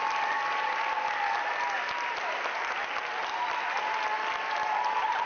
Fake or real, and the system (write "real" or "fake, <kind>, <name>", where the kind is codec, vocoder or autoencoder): real